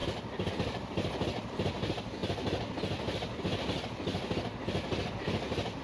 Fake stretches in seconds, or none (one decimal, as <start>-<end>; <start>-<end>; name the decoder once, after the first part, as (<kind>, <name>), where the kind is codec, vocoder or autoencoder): none